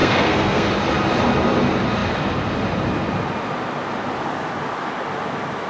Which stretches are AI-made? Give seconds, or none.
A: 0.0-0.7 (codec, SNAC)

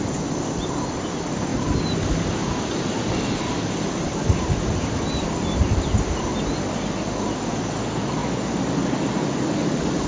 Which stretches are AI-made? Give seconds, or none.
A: none

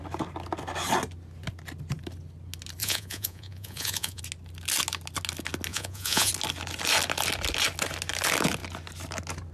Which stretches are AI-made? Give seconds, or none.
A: 2.8-4.2 (vocoder, Vocos); 5.7-6.3

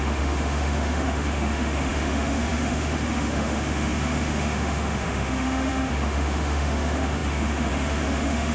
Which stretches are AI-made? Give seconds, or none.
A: 0.0-8.5 (autoencoder, DAC-VAE)